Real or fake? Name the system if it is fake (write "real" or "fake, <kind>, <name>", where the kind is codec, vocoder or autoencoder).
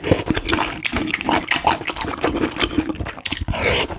real